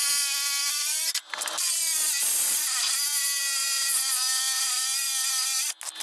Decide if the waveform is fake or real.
real